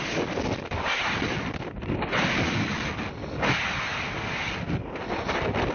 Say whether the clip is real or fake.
real